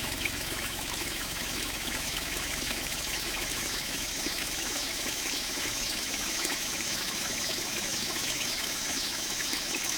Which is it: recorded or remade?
remade